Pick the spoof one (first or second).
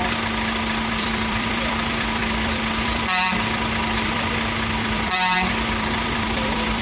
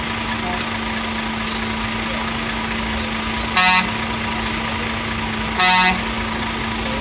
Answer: first